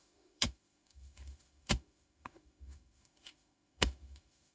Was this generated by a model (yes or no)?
yes